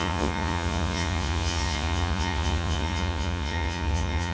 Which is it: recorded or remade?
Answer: remade